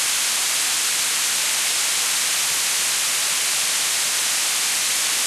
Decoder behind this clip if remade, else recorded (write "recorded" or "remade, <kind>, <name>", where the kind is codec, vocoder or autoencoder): recorded